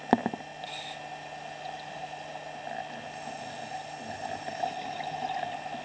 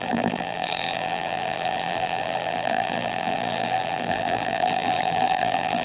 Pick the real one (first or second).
first